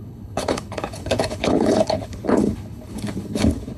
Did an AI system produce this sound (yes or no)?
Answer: yes